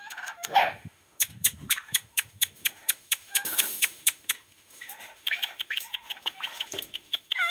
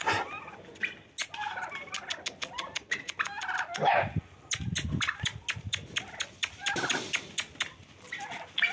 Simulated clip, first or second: first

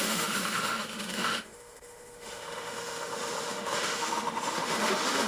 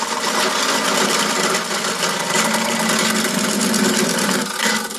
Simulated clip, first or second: first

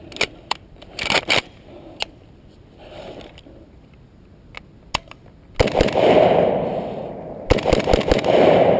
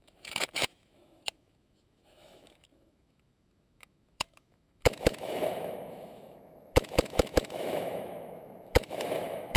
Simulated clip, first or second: second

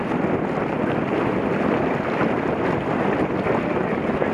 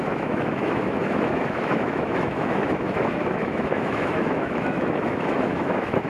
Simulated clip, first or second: second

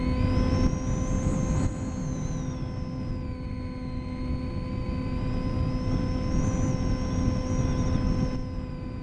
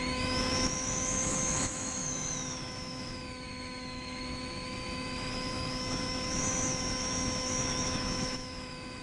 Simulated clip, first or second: second